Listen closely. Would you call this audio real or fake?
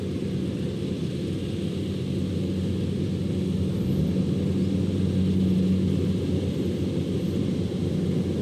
real